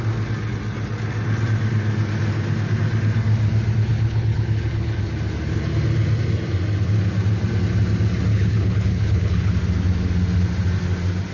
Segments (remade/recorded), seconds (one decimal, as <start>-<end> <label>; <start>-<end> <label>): 0.0-3.9 recorded; 3.9-5.0 remade; 5.0-8.3 recorded; 8.3-9.5 remade; 9.5-11.3 recorded